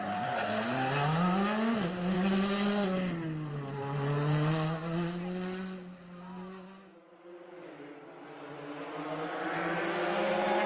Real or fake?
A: real